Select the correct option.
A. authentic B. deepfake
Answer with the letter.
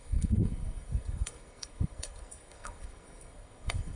B